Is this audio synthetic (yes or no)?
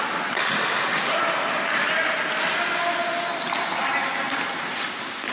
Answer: no